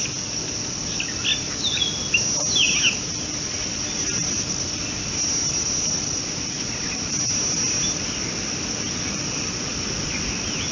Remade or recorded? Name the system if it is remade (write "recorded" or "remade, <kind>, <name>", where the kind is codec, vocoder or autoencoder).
recorded